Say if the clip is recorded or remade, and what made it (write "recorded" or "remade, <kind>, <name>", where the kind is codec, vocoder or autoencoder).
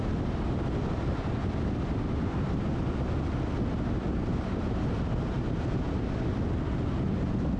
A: recorded